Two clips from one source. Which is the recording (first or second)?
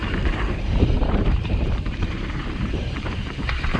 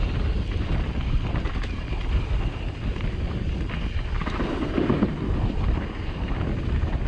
second